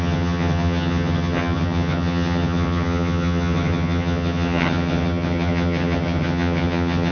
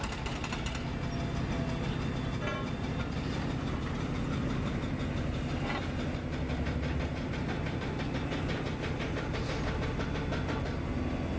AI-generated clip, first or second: first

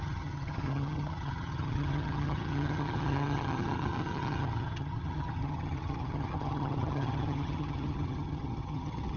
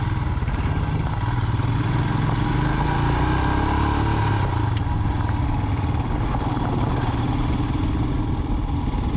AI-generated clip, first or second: first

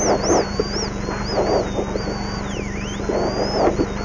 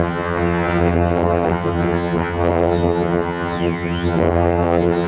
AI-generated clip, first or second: second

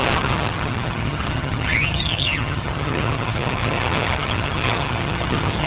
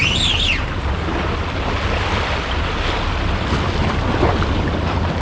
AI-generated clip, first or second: first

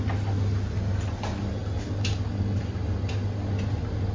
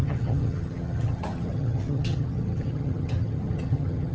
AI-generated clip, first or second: second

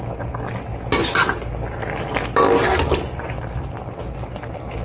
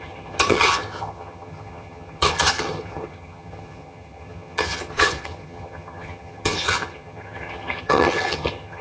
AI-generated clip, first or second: second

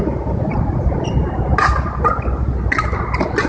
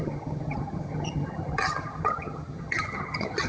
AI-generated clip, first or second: second